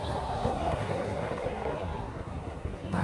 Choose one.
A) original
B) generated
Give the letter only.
B